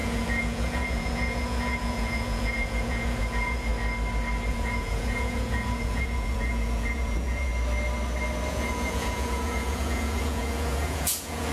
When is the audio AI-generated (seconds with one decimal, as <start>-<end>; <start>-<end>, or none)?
0.0-3.7; 4.5-7.5; 8.5-11.5